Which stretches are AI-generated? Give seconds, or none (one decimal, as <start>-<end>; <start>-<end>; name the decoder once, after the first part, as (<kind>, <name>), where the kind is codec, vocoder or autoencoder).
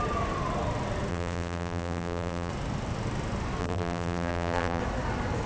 1.1-2.5 (vocoder, BigVGAN v2); 3.6-4.8